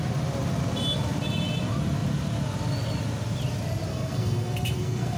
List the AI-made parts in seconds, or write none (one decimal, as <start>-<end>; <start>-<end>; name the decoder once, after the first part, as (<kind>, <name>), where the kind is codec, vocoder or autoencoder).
3.9-5.2 (codec, SNAC)